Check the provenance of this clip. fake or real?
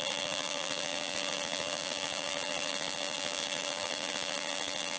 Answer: fake